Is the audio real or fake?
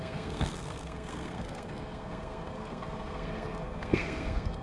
fake